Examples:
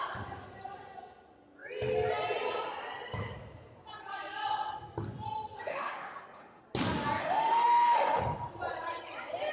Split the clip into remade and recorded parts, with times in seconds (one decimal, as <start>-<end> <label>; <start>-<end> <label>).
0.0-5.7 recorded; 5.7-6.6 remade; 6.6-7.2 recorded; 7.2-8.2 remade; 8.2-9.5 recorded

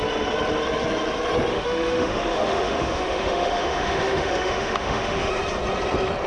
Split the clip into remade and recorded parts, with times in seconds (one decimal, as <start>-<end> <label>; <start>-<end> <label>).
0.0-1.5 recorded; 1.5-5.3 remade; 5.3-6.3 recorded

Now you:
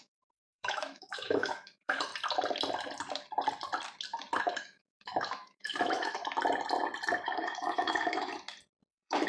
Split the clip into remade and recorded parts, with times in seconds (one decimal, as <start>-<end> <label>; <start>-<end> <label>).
0.0-2.1 remade; 2.1-4.4 recorded; 4.4-6.2 remade; 6.2-7.4 recorded; 7.4-8.3 remade; 8.3-8.9 recorded; 8.9-9.3 remade

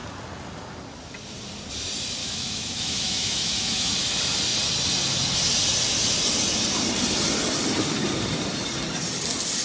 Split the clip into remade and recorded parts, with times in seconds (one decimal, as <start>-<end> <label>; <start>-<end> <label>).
0.0-2.2 recorded; 2.2-3.9 remade; 3.9-9.6 recorded

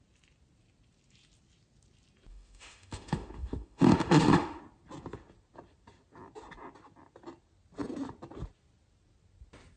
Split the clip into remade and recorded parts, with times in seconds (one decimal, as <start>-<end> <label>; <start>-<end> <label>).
0.0-2.3 recorded; 2.3-4.6 remade; 4.6-9.8 recorded

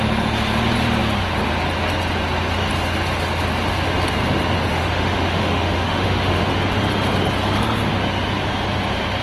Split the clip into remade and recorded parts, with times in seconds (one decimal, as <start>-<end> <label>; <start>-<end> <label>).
0.0-4.7 recorded; 4.7-6.5 remade; 6.5-9.2 recorded

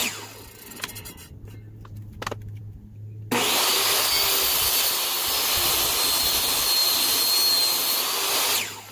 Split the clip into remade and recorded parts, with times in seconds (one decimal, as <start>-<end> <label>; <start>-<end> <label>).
0.0-8.9 recorded